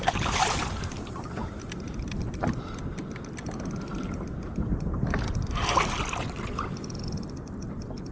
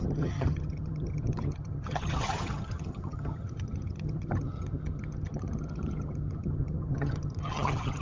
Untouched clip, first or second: first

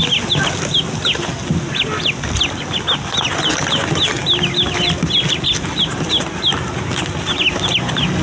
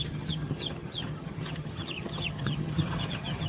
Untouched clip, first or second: first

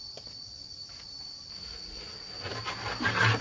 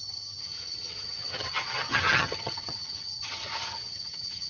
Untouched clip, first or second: first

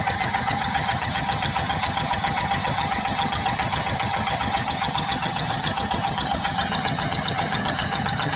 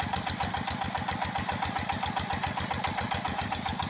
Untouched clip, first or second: second